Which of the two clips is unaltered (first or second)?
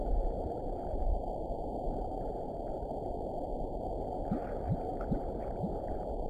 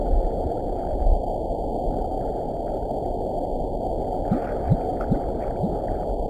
second